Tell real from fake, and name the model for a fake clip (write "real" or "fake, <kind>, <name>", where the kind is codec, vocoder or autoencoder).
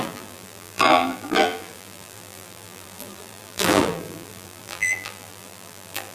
fake, vocoder, BigVGAN v2